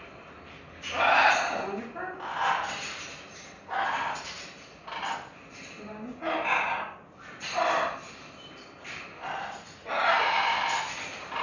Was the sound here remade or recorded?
recorded